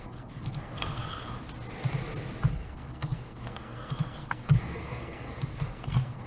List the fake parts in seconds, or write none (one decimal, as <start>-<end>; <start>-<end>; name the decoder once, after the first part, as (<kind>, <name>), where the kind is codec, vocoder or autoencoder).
0.0-1.2 (codec, SNAC); 2.5-6.3

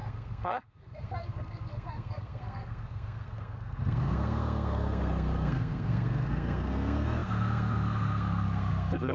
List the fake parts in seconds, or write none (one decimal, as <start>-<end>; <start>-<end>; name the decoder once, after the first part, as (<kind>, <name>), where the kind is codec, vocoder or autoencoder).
0.0-9.1 (codec, SNAC)

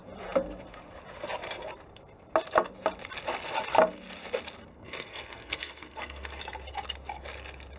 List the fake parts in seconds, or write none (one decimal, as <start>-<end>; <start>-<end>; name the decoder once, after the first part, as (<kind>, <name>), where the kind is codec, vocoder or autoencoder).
4.7-6.4 (codec, SNAC)

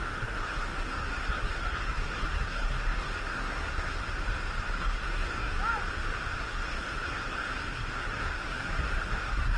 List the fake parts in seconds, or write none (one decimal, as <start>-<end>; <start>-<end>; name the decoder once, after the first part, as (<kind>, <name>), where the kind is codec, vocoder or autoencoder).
0.0-4.0 (codec, SNAC); 4.8-5.5; 6.4-9.6

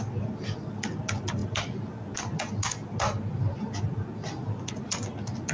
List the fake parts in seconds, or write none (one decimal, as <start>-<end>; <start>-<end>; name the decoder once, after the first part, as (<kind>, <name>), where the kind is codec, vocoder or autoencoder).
none

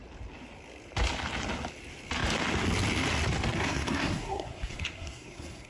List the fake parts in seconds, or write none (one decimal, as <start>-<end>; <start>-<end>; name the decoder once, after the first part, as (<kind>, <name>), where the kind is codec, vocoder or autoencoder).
3.6-5.7 (codec, SNAC)

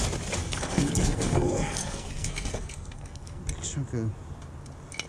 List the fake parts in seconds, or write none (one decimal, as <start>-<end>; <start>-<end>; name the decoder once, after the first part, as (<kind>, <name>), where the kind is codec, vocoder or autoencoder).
0.4-3.4 (codec, SNAC)

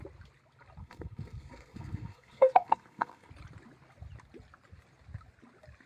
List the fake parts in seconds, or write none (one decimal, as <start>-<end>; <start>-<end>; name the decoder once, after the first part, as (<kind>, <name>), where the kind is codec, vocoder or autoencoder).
0.8-3.3 (codec, SNAC)